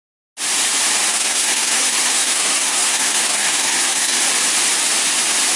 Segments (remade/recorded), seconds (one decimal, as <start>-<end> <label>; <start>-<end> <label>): 0.0-1.1 recorded; 1.1-4.2 remade; 4.2-5.6 recorded